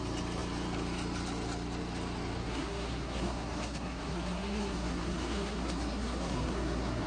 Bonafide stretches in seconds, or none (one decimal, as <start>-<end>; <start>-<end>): 0.0-2.4